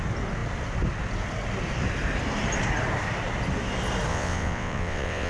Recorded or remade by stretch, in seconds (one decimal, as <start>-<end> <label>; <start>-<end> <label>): 0.0-4.1 recorded; 4.1-5.3 remade